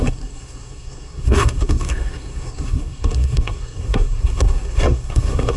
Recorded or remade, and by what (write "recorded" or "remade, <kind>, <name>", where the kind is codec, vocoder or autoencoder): remade, codec, SNAC